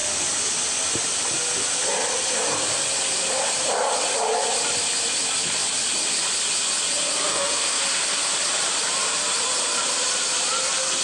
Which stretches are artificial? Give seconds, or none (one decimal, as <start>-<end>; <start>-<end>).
7.3-7.8